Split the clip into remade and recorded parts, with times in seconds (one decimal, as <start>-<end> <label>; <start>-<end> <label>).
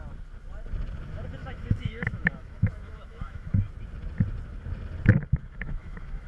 0.0-1.4 recorded; 1.4-3.7 remade; 3.7-5.1 recorded; 5.1-6.3 remade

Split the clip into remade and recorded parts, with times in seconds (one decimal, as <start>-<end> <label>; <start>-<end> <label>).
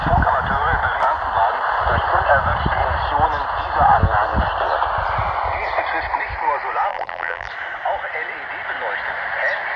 0.0-6.9 recorded; 6.9-7.5 remade; 7.5-9.8 recorded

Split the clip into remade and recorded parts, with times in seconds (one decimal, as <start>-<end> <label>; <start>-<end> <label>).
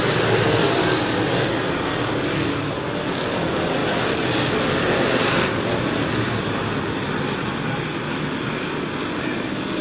0.0-9.8 recorded